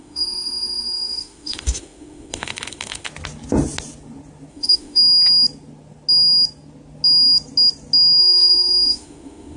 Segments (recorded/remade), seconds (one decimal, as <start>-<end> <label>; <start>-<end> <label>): 0.0-3.1 remade; 3.1-4.5 recorded; 4.5-5.0 remade; 5.0-8.2 recorded; 8.2-9.6 remade